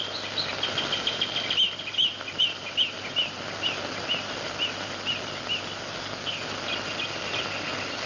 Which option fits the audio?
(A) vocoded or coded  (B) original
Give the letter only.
B